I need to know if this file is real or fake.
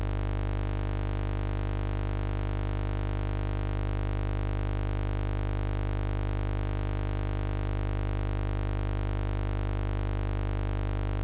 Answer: real